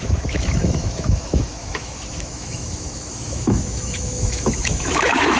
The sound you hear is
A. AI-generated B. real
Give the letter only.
A